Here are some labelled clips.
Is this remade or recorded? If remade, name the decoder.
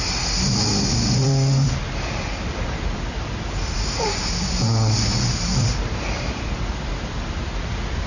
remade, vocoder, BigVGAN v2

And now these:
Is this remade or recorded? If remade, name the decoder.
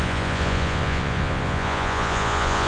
remade, vocoder, Vocos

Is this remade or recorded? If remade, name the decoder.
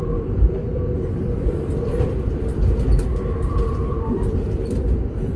remade, vocoder, BigVGAN v2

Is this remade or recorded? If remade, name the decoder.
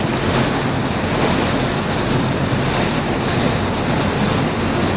recorded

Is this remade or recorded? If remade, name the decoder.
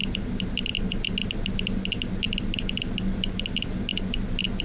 recorded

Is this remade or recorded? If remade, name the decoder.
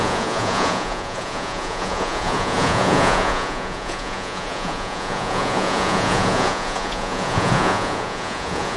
remade, vocoder, Vocos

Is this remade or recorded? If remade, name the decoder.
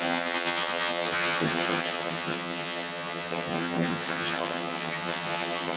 remade, vocoder, HiFi-GAN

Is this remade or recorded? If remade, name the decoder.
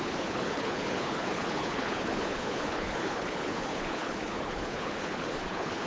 remade, codec, HILCodec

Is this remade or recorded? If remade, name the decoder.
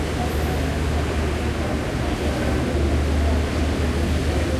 recorded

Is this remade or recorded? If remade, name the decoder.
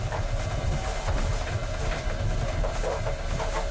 recorded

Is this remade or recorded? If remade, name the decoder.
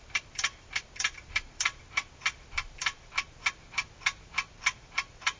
remade, vocoder, BigVGAN v2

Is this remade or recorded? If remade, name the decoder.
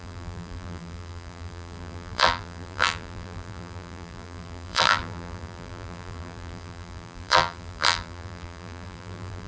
remade, vocoder, BigVGAN v2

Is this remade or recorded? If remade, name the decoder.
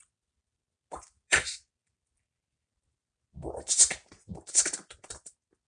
recorded